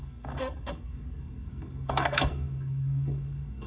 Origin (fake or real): fake